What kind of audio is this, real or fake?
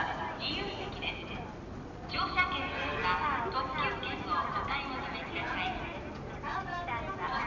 real